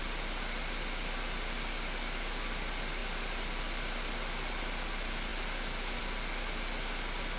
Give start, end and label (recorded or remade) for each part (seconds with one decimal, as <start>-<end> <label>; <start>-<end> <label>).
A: 0.0-7.4 recorded